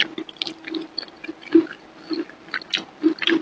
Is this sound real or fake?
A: real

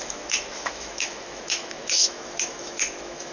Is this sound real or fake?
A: fake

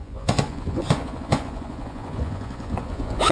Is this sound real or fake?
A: fake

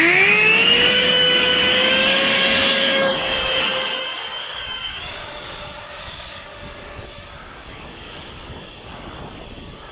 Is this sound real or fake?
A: fake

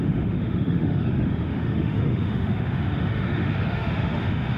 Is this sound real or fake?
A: fake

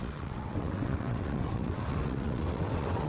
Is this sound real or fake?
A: fake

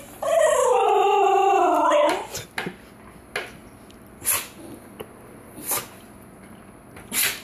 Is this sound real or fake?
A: real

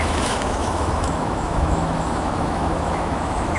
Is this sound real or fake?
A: fake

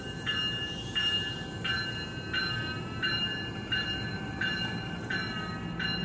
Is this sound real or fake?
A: real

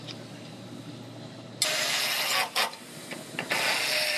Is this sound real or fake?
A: real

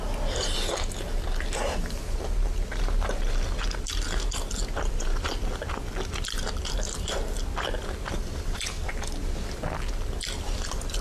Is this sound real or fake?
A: real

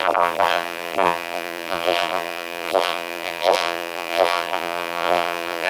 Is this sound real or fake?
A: fake